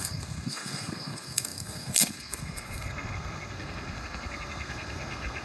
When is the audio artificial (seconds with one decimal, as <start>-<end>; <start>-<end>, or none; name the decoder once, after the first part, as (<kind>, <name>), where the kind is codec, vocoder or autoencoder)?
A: 0.0-5.4 (codec, SNAC)